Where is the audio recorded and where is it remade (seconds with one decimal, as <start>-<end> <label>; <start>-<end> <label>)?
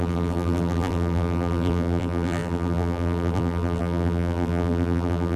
0.0-5.4 remade